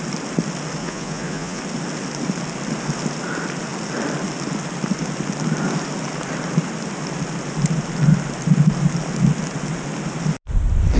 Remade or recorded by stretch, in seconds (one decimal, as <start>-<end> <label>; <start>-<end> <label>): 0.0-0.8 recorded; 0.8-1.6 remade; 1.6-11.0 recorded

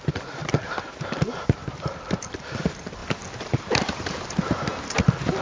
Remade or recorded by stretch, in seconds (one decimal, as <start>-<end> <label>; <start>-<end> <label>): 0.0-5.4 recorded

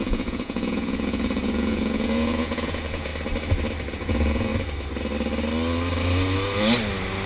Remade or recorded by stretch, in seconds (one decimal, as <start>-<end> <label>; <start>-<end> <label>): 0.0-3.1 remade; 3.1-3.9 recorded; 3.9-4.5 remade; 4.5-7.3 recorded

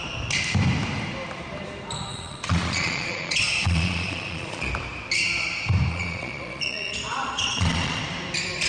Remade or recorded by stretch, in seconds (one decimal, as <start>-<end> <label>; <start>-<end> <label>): 0.0-2.1 recorded; 2.1-4.7 remade; 4.7-5.9 recorded; 5.9-8.0 remade; 8.0-8.7 recorded

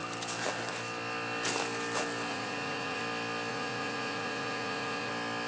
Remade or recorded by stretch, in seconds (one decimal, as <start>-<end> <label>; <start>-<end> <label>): 0.0-2.3 recorded; 2.3-3.0 remade; 3.0-3.5 recorded; 3.5-5.1 remade; 5.1-5.5 recorded